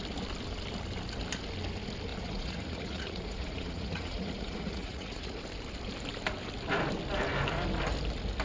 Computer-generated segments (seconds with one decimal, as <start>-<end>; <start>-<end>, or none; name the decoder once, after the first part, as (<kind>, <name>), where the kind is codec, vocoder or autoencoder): 2.1-5.4 (vocoder, Vocos)